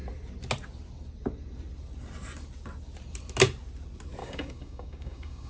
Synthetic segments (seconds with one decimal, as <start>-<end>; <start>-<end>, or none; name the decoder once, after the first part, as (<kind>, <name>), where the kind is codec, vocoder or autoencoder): 4.2-5.5 (codec, DAC)